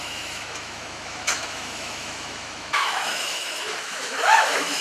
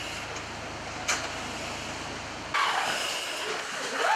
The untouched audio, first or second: second